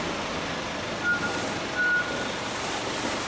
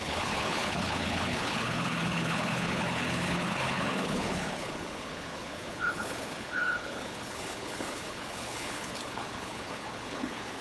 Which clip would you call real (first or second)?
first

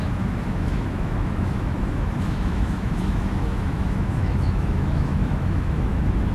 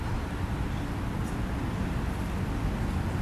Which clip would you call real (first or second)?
second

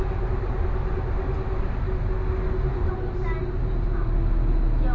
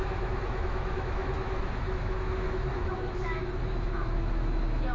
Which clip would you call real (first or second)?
first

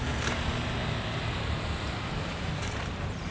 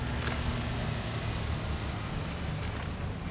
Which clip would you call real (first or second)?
second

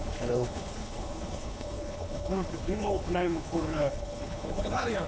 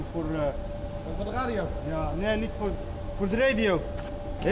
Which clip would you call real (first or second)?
second